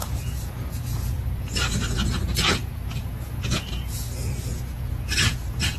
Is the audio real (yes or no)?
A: no